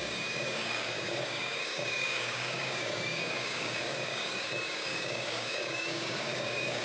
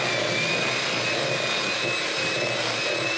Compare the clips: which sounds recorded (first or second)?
second